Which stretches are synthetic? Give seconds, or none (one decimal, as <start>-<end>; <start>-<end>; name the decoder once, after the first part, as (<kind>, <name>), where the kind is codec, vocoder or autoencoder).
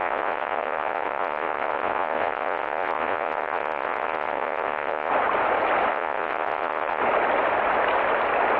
0.0-5.1 (vocoder, Vocos); 5.9-7.0